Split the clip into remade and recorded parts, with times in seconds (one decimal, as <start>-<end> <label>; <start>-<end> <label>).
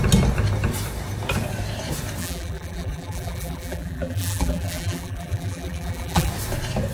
0.0-2.2 recorded; 2.2-6.3 remade; 6.3-6.9 recorded